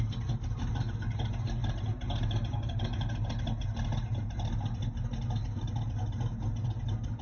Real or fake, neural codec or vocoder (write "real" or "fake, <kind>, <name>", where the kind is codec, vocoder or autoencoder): real